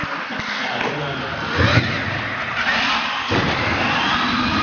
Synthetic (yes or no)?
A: no